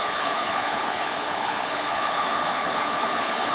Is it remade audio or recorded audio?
remade